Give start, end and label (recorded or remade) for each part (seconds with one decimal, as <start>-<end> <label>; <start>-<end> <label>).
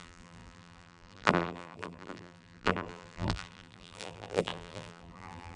0.0-5.6 remade